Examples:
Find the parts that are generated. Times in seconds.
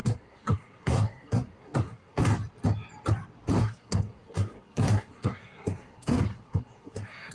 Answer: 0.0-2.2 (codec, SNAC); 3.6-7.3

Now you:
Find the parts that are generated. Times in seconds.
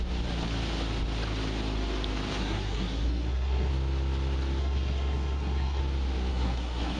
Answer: 2.4-3.7 (codec, SNAC); 4.6-5.8; 6.3-7.0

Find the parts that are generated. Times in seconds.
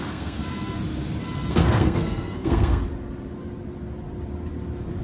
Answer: 0.0-0.4 (codec, SNAC); 1.5-2.8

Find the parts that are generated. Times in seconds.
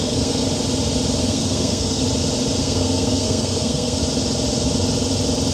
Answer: 0.0-0.4 (codec, SNAC); 1.2-2.0; 2.6-4.0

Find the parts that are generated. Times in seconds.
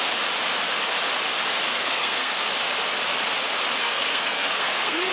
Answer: 1.7-2.5 (codec, SNAC); 3.8-5.1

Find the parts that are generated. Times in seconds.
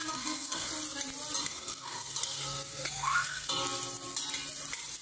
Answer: 0.0-0.7 (codec, SNAC); 1.4-3.5